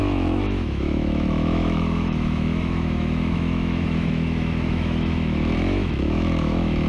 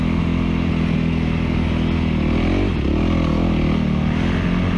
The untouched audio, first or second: second